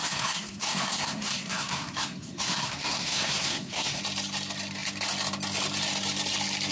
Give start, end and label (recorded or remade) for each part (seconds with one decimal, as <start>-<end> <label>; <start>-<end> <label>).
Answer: 0.0-4.0 remade; 4.0-6.7 recorded